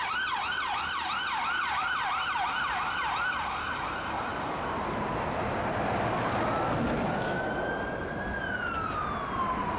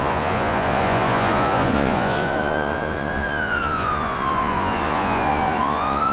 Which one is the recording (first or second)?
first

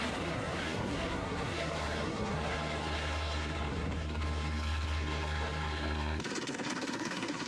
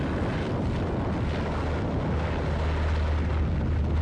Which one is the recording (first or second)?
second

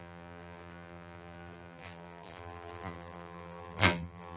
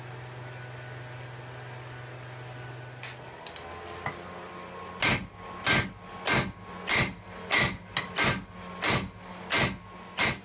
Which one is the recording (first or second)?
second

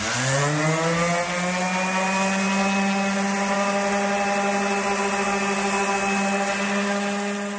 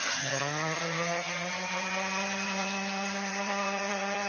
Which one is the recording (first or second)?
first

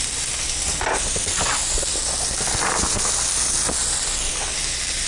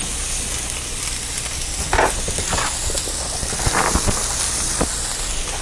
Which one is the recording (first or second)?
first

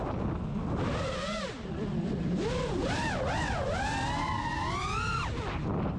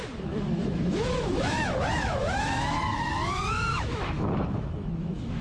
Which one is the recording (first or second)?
first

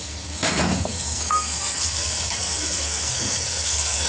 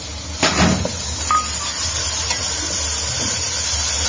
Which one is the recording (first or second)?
second